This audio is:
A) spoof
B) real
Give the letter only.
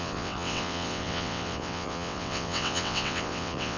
A